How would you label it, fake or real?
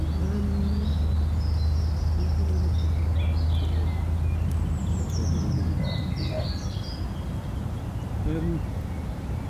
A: real